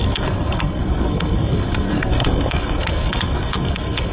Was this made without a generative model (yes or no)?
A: no